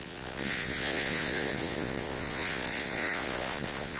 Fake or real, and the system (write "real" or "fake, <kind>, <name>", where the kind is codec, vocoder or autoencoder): fake, vocoder, Vocos